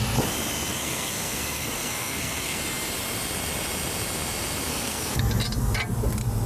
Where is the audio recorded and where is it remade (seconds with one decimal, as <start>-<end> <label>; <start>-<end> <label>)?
0.0-0.7 recorded; 0.7-2.6 remade; 2.6-4.7 recorded; 4.7-5.2 remade; 5.2-6.5 recorded